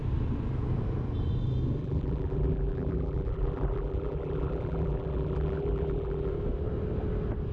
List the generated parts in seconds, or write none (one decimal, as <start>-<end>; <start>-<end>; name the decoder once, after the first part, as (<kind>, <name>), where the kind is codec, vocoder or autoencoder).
1.8-6.3 (vocoder, BigVGAN v2)